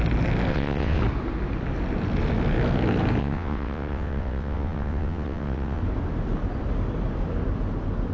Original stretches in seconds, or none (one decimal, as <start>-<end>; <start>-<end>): 0.0-0.5; 1.0-3.2; 5.8-8.1